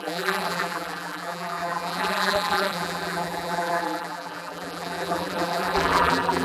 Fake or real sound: fake